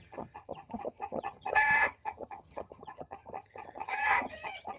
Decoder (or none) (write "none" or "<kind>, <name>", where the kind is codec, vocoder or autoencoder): vocoder, HiFi-GAN